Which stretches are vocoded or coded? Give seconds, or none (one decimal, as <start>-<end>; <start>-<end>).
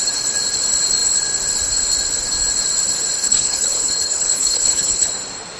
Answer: 3.2-5.1